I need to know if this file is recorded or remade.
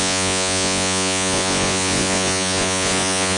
remade